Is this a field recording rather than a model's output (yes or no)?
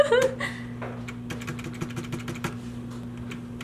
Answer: yes